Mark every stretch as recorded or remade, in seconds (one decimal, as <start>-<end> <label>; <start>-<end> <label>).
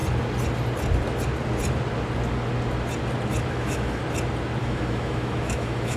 0.0-3.5 recorded; 3.5-4.0 remade; 4.0-4.6 recorded; 4.6-6.0 remade